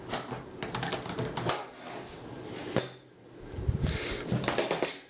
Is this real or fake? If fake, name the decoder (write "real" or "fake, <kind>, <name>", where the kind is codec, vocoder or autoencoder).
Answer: real